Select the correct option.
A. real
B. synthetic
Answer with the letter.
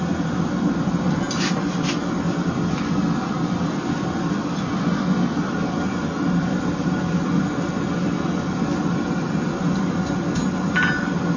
A